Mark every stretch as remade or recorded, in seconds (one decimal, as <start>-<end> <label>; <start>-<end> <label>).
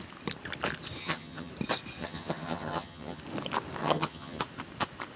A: 0.0-1.0 recorded; 1.0-1.5 remade; 1.5-2.0 recorded; 2.0-3.2 remade; 3.2-3.8 recorded; 3.8-4.4 remade; 4.4-5.2 recorded